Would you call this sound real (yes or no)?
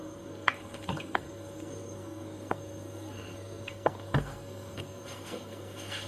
no